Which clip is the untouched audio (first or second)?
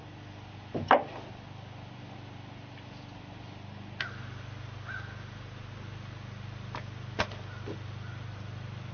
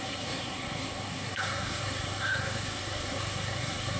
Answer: first